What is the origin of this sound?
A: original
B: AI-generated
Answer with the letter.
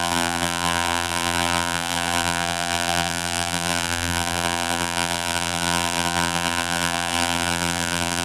B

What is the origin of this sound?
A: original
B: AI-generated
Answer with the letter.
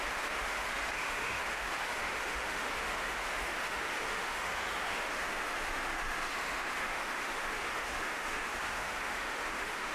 B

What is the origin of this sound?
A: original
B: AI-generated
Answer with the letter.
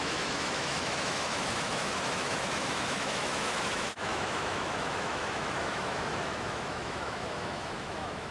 B